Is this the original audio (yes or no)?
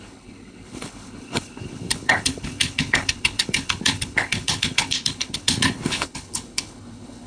no